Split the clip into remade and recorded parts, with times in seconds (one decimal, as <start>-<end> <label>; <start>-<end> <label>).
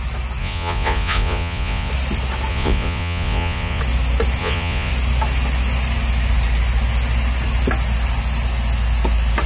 0.0-0.4 recorded; 0.4-1.9 remade; 1.9-2.5 recorded; 2.5-3.8 remade; 3.8-4.4 recorded; 4.4-4.9 remade; 4.9-9.5 recorded